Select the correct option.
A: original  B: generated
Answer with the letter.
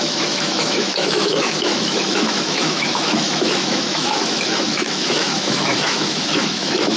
B